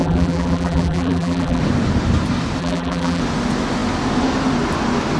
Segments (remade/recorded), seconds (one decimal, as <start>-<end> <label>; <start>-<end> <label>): 0.0-1.6 remade; 1.6-2.6 recorded; 2.6-3.2 remade; 3.2-5.2 recorded